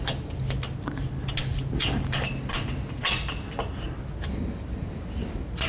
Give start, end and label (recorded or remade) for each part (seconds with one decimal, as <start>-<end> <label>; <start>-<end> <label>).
0.0-5.7 recorded